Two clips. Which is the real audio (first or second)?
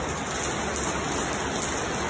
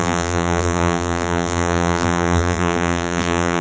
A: first